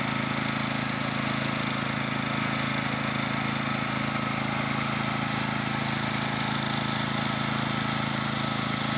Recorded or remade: recorded